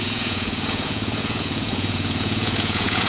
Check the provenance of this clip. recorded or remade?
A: remade